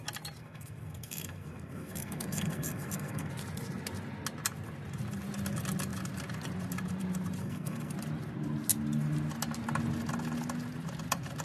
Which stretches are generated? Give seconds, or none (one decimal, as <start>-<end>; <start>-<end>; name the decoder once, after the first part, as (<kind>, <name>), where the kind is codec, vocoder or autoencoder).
0.4-3.3 (codec, SNAC); 7.4-7.9